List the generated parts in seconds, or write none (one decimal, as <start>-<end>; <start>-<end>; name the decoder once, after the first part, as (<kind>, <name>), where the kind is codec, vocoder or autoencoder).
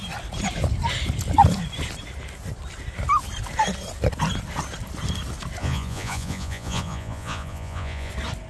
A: 5.6-8.1 (vocoder, Vocos)